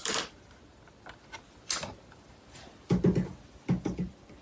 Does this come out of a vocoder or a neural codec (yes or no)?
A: no